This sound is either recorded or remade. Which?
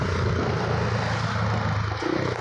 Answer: recorded